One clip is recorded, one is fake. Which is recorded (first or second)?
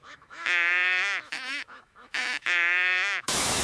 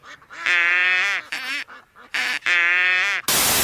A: second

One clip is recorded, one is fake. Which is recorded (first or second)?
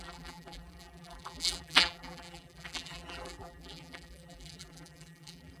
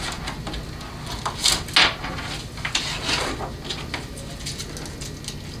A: second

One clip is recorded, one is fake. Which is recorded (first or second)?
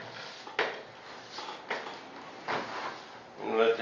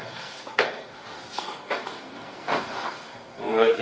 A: first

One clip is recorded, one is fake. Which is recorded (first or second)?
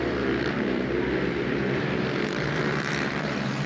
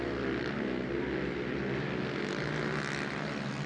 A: second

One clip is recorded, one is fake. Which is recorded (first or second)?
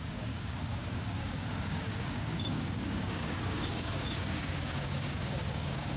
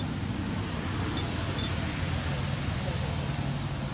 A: second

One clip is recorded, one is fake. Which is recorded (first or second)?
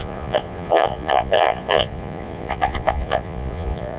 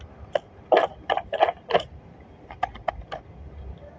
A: second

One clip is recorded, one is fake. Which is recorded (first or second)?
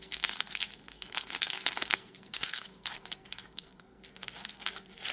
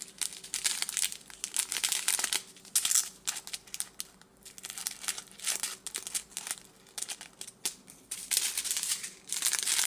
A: second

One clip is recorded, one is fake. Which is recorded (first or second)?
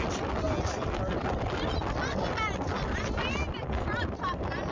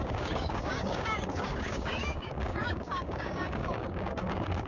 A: first